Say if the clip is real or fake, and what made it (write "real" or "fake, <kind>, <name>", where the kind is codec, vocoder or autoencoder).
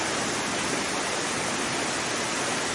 real